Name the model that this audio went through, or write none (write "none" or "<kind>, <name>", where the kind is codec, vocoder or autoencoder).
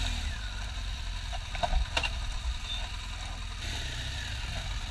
vocoder, BigVGAN v2